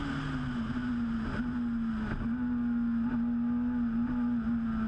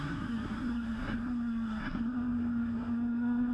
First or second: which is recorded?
first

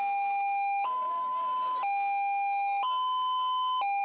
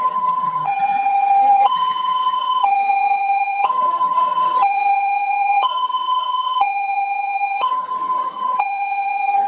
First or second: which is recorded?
first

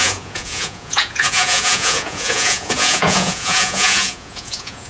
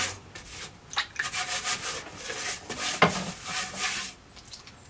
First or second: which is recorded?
second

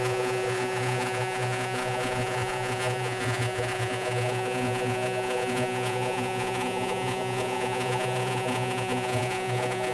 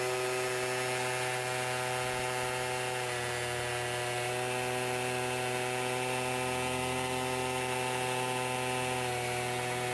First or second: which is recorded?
second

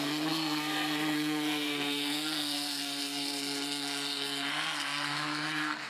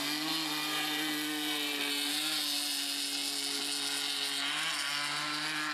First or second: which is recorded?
second